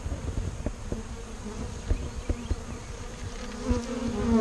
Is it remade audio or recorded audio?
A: recorded